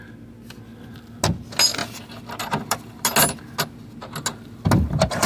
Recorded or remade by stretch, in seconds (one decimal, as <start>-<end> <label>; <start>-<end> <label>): 0.0-5.3 recorded